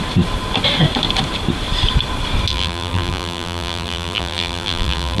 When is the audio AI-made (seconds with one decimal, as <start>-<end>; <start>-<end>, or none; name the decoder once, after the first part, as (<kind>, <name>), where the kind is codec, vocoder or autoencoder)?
2.5-5.2 (vocoder, BigVGAN v2)